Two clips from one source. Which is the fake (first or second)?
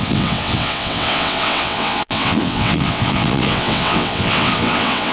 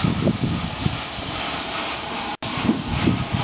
first